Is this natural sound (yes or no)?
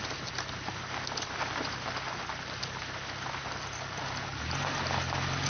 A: yes